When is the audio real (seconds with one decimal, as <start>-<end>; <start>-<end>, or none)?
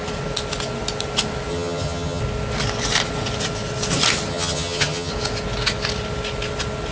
0.0-1.5; 2.2-4.3; 5.1-6.9